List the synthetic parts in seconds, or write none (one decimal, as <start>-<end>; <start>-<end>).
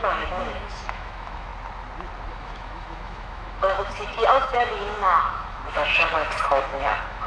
0.0-1.5; 2.3-7.3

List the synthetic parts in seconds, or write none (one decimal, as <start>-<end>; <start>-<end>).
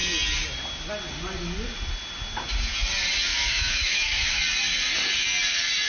3.3-4.4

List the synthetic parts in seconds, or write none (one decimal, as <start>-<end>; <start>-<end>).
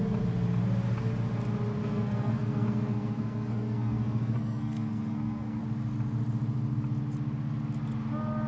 1.8-5.6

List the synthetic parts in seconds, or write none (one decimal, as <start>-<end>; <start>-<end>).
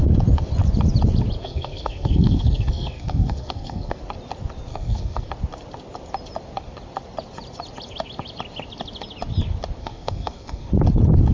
1.4-4.0; 4.7-5.3; 9.8-10.7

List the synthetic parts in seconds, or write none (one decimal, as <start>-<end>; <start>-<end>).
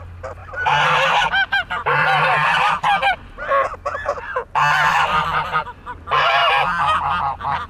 0.4-3.4; 4.9-5.6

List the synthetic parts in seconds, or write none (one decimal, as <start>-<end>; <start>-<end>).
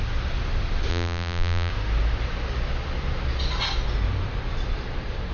0.9-1.7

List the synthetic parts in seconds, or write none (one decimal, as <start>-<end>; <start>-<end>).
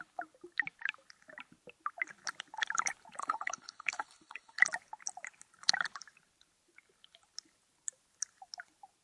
3.2-4.6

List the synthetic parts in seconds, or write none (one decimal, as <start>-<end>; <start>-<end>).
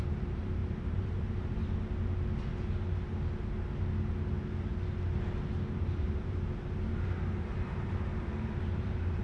0.0-1.6; 5.7-9.2